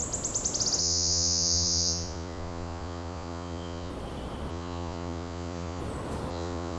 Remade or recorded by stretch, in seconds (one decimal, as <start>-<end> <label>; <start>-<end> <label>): 0.0-0.8 recorded; 0.8-3.9 remade; 3.9-4.5 recorded; 4.5-5.8 remade; 5.8-6.3 recorded; 6.3-6.8 remade